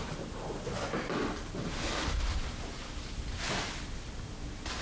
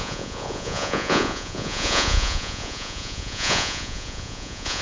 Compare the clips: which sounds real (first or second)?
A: first